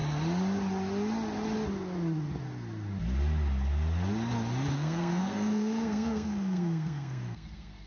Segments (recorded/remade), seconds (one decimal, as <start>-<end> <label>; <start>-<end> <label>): 0.0-4.7 recorded; 4.7-7.9 remade